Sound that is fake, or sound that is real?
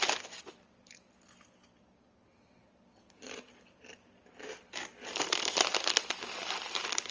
real